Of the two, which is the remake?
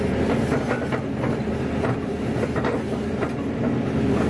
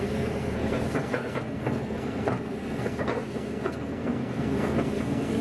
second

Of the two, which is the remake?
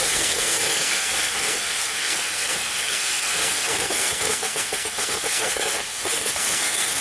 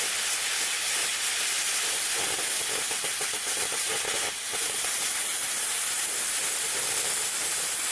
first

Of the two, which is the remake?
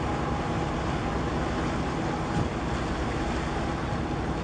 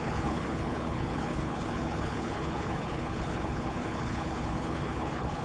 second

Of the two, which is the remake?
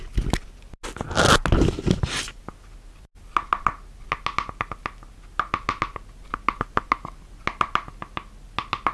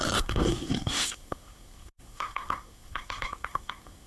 second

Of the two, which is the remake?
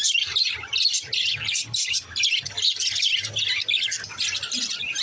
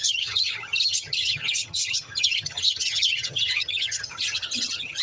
second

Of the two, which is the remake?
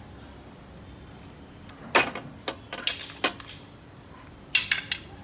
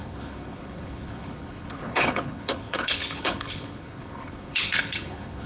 second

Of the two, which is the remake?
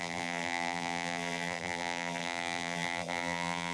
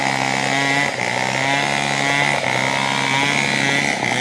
first